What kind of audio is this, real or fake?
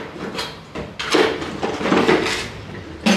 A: real